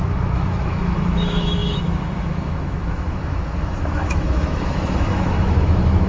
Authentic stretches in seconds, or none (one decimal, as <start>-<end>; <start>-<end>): none